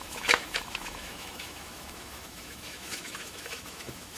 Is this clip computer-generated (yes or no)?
yes